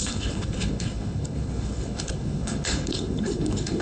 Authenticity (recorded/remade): remade